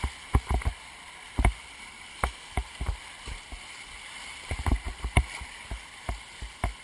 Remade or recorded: recorded